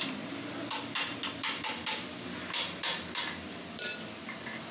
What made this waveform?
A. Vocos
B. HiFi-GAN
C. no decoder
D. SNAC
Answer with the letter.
C